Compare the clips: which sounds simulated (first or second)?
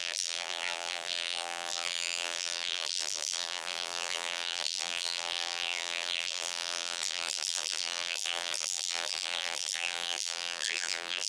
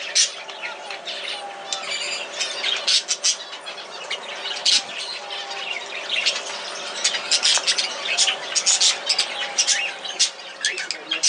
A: first